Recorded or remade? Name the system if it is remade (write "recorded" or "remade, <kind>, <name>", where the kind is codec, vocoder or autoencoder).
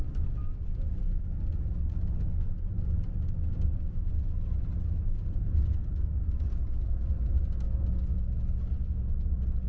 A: recorded